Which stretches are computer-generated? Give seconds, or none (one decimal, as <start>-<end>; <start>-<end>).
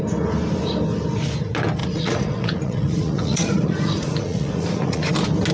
1.8-5.1